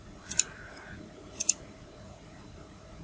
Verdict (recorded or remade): remade